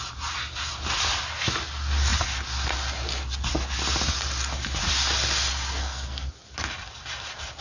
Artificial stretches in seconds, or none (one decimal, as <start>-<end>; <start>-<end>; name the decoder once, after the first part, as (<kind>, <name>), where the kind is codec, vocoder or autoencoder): 5.8-6.3 (codec, SNAC)